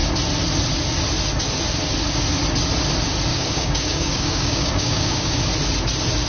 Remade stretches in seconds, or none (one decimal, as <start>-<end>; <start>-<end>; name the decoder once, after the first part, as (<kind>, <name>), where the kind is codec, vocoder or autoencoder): 3.3-5.4 (codec, DAC)